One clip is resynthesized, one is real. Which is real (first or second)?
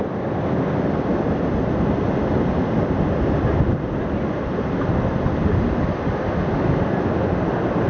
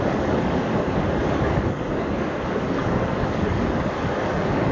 first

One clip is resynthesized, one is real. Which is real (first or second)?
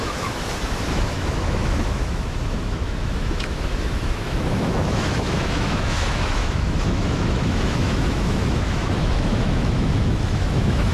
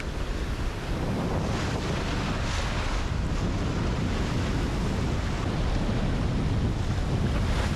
second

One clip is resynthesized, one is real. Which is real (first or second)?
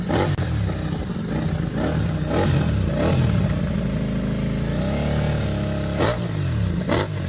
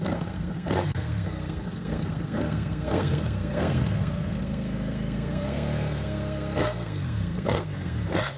first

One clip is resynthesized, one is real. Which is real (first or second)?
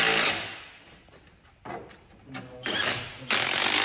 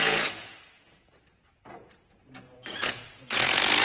first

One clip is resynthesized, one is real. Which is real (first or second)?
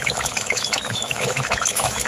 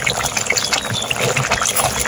second